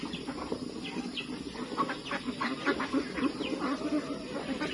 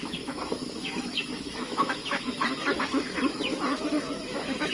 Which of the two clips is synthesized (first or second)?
second